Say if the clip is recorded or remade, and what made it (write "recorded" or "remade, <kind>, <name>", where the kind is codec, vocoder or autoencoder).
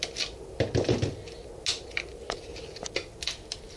recorded